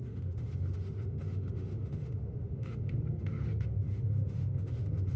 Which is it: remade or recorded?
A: remade